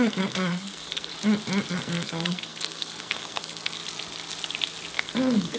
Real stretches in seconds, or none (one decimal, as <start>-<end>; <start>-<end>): 1.1-1.7; 3.8-4.9